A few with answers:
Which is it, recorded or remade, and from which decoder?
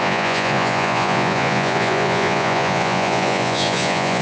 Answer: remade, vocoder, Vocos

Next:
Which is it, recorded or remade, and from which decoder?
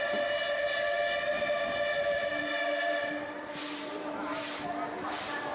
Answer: recorded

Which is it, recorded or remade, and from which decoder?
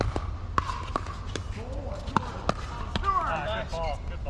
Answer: recorded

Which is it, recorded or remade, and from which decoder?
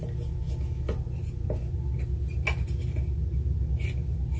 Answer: recorded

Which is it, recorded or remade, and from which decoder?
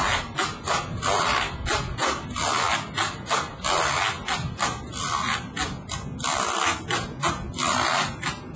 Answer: recorded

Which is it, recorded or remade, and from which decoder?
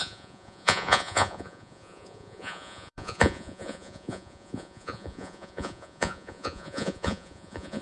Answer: remade, vocoder, Vocos